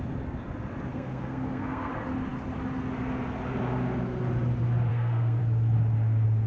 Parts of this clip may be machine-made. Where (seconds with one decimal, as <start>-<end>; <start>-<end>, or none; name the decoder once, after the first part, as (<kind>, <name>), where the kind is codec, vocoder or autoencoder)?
0.9-1.9 (codec, SNAC); 4.9-5.4